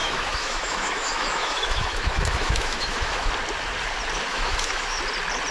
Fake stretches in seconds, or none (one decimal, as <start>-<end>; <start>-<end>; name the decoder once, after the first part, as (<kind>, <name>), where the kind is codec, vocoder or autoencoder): 0.0-3.3 (autoencoder, DAC-VAE); 4.3-5.0

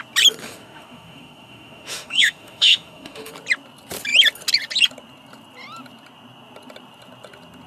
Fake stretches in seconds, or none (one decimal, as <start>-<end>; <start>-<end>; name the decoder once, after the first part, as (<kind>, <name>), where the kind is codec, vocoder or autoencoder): 0.4-3.3 (autoencoder, DAC-VAE)

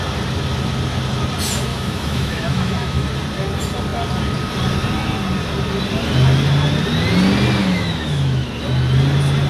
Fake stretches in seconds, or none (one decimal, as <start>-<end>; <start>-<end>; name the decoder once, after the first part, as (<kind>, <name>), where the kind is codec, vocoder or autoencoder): 1.7-3.1 (autoencoder, DAC-VAE); 7.6-8.5

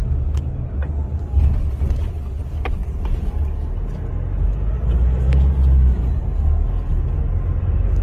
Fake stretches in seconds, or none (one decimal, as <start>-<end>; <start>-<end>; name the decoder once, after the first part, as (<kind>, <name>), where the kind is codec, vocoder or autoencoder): none

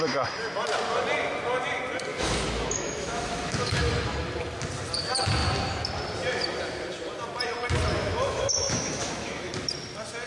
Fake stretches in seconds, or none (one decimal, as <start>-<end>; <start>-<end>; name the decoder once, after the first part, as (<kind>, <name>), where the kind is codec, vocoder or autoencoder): 2.1-3.9 (autoencoder, DAC-VAE); 7.9-9.5

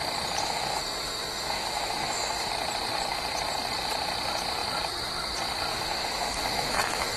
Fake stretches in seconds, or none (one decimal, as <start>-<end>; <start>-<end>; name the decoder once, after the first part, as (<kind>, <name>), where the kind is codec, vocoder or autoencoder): 0.4-2.5 (autoencoder, DAC-VAE); 5.7-7.2

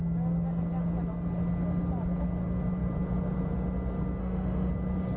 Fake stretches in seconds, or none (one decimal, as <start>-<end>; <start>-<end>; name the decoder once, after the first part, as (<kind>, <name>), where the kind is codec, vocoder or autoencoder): 4.2-4.7 (autoencoder, DAC-VAE)